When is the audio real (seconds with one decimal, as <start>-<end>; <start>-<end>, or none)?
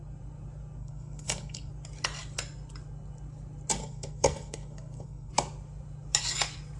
0.0-0.8; 1.7-3.8; 5.3-6.8